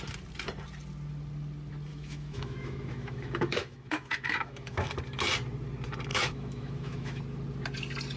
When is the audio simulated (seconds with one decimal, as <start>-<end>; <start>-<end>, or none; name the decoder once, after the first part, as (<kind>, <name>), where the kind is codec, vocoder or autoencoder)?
1.9-4.9 (autoencoder, DAC-VAE); 6.1-7.2